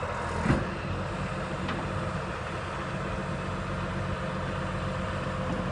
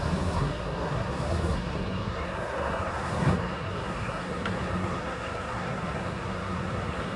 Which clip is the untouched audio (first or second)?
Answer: first